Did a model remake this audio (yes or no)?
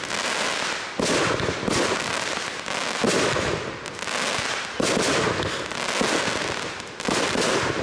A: no